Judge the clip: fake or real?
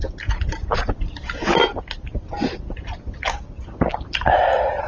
real